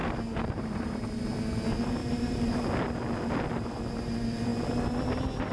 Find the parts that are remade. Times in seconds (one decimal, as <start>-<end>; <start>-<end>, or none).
0.0-1.2; 2.0-2.7